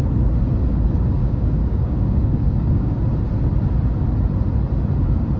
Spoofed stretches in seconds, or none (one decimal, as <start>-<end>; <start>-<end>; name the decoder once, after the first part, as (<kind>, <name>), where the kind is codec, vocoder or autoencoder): 1.2-2.9 (codec, DAC)